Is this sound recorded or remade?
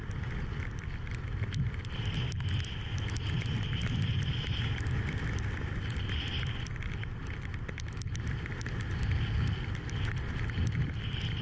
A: recorded